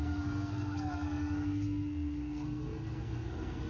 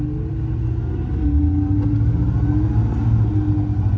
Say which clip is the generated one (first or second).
first